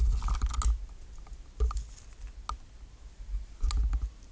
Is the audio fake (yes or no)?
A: no